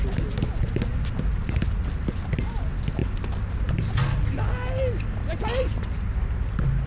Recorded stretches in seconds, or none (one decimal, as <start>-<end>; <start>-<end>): 0.0-6.9